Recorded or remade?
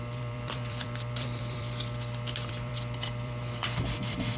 remade